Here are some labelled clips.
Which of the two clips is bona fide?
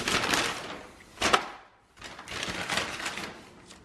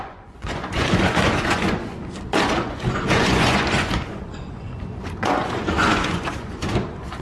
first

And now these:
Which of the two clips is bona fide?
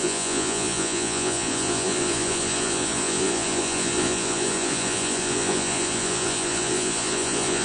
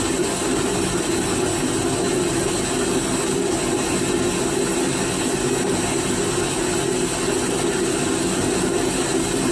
second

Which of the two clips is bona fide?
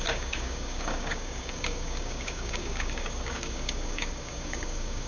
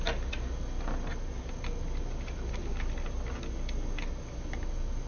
second